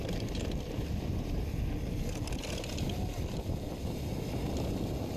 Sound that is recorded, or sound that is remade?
recorded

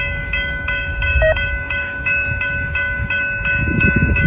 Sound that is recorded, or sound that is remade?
remade